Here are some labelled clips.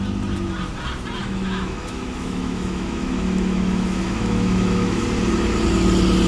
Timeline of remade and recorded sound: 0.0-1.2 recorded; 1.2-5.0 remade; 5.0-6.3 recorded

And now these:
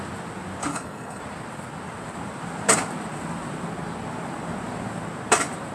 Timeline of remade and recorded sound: 0.0-0.7 recorded; 0.7-1.2 remade; 1.2-5.7 recorded

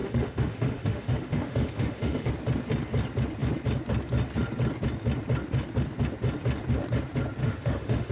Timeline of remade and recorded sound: 0.0-2.3 remade; 2.3-7.4 recorded; 7.4-8.1 remade

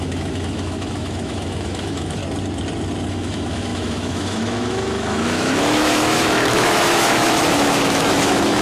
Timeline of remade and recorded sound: 0.0-2.2 remade; 2.2-3.1 recorded; 3.1-8.6 remade